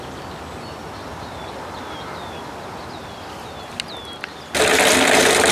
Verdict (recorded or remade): recorded